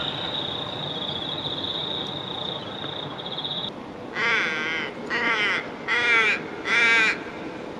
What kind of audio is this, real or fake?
real